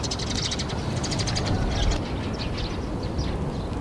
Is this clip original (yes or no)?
yes